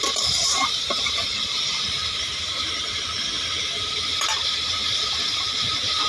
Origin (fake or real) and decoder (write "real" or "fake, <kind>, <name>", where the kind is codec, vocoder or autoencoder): fake, vocoder, BigVGAN v2